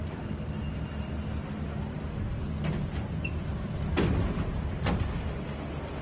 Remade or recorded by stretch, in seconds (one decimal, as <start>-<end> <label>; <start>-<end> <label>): 0.0-6.0 recorded